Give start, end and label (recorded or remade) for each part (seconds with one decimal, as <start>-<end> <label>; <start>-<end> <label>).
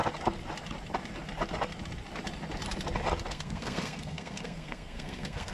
0.0-3.3 recorded; 3.3-5.5 remade